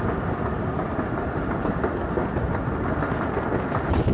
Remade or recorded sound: recorded